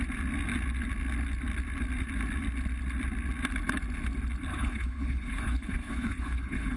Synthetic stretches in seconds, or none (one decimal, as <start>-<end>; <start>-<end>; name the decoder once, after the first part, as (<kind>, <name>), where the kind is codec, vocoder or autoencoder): 4.5-6.8 (codec, HILCodec)